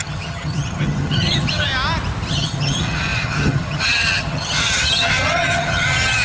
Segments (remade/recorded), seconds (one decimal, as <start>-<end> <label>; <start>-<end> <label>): 0.0-1.7 remade; 1.7-2.3 recorded; 2.3-6.2 remade